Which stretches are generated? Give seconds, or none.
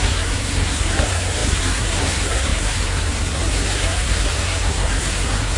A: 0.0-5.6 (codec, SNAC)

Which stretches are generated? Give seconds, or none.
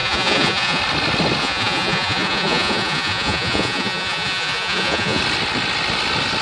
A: 0.0-0.8 (vocoder, Vocos); 1.4-5.2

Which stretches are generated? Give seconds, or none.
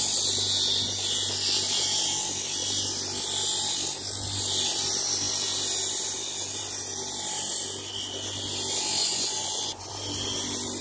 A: 9.0-9.9 (vocoder, Vocos)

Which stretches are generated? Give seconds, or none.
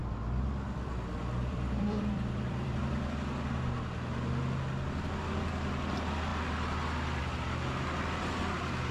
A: 0.0-2.8 (vocoder, BigVGAN v2)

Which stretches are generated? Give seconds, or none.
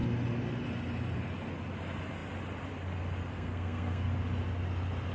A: 3.3-4.1 (codec, SNAC)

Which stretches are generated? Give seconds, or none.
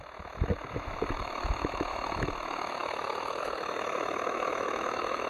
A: 0.0-5.3 (autoencoder, DAC-VAE)